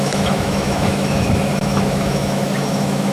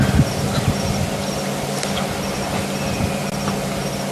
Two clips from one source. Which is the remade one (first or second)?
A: first